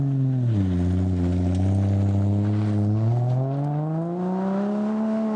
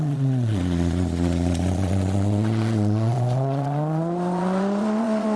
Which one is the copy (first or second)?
second